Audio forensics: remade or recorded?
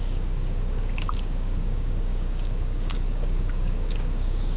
remade